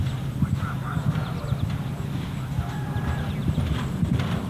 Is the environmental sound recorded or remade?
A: remade